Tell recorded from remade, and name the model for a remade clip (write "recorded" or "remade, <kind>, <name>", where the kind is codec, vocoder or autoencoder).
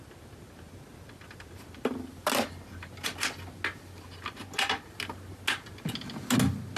recorded